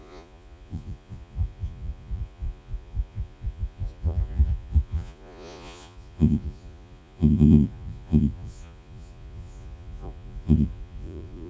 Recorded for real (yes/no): no